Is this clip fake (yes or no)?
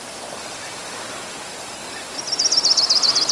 no